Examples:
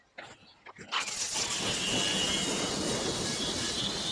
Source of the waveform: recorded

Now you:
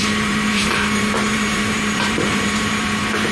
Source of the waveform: remade